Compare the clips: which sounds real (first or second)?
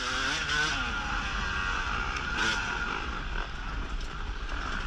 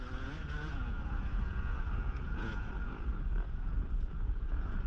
first